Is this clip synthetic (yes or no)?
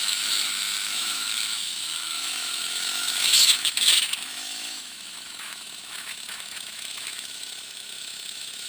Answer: yes